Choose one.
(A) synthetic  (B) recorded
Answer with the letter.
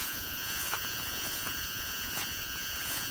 A